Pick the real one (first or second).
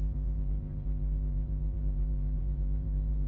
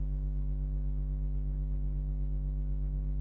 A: second